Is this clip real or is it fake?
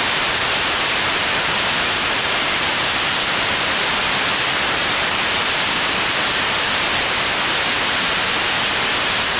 fake